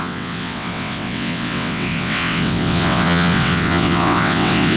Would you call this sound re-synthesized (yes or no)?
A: yes